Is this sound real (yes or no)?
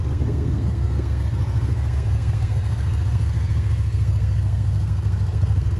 no